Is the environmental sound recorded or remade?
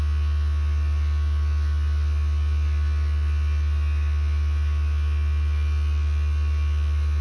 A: recorded